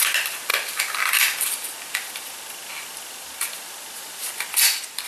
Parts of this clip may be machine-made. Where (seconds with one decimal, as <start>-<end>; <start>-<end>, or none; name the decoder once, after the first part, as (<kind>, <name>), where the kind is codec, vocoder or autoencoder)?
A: none